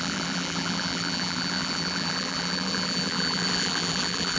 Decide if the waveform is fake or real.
fake